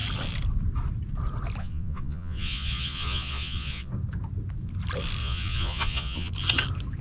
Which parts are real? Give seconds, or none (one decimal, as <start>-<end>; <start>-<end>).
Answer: 0.0-1.6; 3.9-5.2; 6.3-7.0